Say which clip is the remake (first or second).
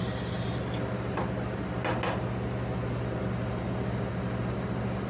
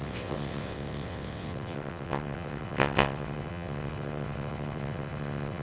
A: second